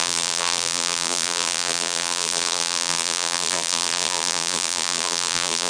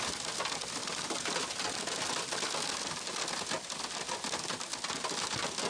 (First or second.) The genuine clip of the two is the second